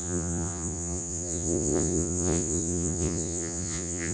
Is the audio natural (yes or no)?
no